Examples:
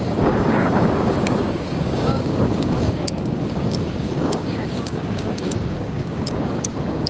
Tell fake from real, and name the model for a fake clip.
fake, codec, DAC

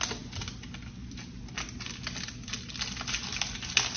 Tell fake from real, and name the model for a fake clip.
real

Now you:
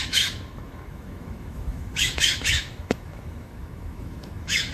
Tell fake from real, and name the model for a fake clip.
fake, autoencoder, DAC-VAE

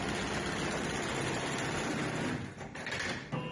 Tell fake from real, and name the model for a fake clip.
real